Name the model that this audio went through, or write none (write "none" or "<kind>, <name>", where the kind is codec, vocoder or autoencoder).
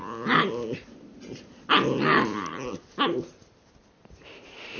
none